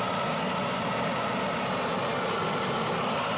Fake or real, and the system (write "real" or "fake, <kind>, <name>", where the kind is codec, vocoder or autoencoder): real